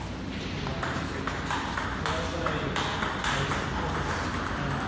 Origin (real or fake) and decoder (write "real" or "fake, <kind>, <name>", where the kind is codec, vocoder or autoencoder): real